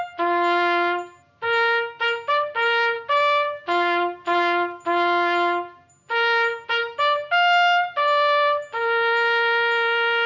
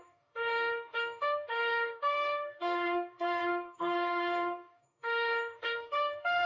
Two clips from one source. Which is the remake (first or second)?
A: second